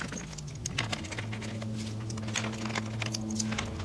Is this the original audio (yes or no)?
yes